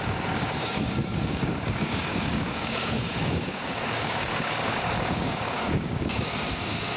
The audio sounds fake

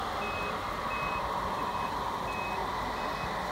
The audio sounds real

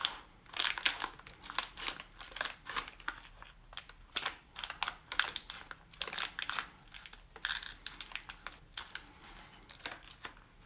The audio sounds real